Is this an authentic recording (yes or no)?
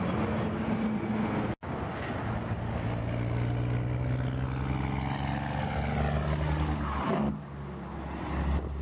yes